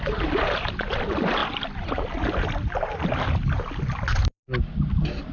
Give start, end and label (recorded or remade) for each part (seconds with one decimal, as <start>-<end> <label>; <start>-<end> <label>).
0.0-5.3 recorded